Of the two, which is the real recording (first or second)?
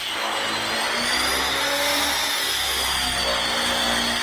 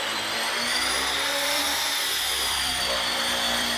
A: first